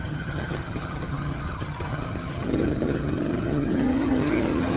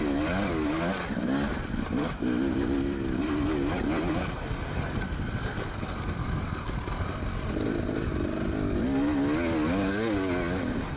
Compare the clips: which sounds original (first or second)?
second